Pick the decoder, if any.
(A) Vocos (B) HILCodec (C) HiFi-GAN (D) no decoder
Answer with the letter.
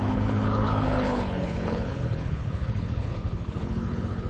B